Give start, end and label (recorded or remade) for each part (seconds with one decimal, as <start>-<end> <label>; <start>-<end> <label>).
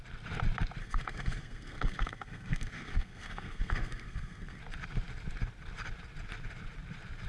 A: 0.0-0.8 recorded; 0.8-4.6 remade; 4.6-7.3 recorded